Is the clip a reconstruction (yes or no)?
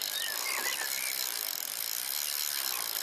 yes